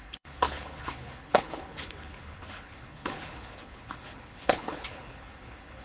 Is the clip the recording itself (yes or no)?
no